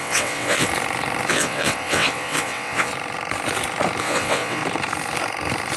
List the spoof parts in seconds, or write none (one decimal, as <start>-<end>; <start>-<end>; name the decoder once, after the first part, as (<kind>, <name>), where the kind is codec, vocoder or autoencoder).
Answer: 0.0-0.7 (vocoder, WaveNeXt); 1.3-2.9; 4.0-4.6